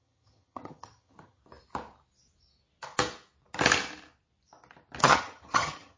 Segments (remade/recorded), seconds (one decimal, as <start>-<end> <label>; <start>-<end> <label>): 0.0-1.4 remade; 1.4-5.0 recorded; 5.0-6.0 remade